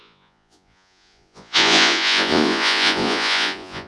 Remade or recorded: remade